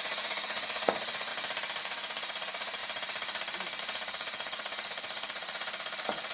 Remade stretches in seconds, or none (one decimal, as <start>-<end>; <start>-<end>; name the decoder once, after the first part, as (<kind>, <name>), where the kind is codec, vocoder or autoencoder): 0.0-1.3 (vocoder, Vocos); 1.8-2.8; 3.8-6.3